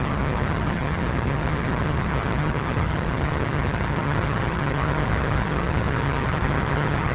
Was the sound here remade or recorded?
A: remade